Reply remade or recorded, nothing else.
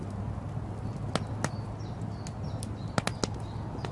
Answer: recorded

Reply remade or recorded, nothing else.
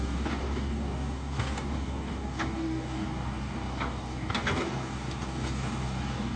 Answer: remade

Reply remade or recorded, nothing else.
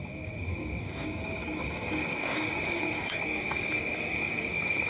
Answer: remade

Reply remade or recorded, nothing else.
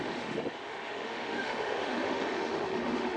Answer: remade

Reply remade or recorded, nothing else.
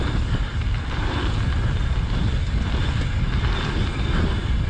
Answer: recorded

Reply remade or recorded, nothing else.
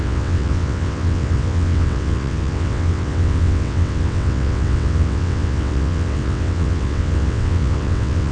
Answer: remade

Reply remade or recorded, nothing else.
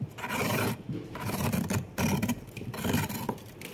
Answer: remade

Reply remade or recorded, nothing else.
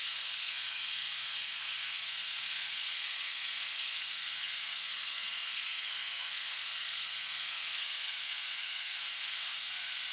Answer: remade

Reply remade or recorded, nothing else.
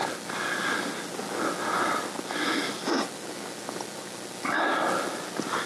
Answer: recorded